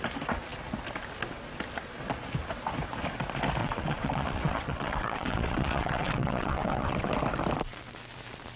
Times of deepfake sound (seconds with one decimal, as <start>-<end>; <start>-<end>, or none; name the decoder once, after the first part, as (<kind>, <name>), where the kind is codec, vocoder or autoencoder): 3.6-7.1 (vocoder, WaveNeXt)